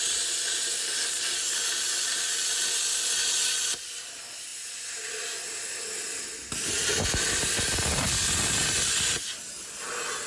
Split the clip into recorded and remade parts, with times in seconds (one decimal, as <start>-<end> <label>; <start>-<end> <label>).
0.0-10.3 recorded